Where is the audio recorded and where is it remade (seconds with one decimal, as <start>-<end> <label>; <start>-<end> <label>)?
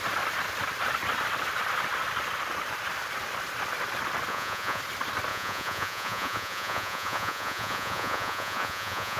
0.0-4.3 recorded; 4.3-4.8 remade; 4.8-5.3 recorded; 5.3-9.2 remade